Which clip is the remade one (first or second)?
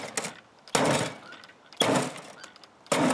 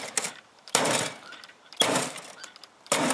second